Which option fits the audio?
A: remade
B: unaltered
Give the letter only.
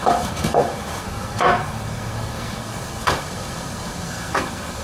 A